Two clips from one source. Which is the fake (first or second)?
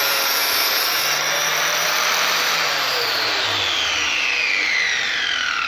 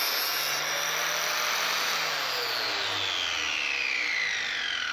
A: first